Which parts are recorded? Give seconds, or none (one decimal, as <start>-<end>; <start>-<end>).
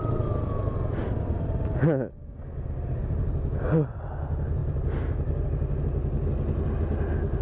0.0-7.4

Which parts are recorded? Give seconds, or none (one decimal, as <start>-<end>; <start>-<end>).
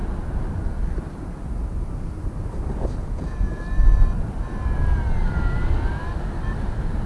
0.0-3.0; 3.6-7.1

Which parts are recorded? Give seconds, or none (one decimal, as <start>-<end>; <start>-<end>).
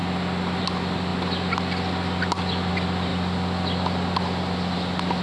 0.0-5.2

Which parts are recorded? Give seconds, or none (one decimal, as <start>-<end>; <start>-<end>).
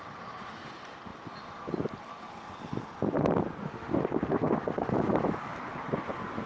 0.0-3.6; 4.9-6.5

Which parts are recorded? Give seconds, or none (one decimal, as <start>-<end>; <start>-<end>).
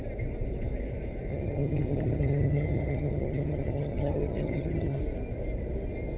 0.0-1.3; 5.0-6.2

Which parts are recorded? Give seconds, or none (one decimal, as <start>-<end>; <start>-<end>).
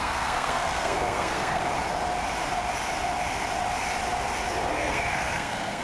1.6-4.7